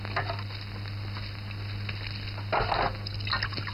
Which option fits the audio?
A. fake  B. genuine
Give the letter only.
B